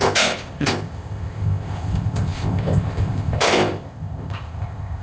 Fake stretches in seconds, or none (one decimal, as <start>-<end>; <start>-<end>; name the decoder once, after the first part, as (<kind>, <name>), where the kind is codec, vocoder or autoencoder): 0.0-5.0 (codec, ZipCodec)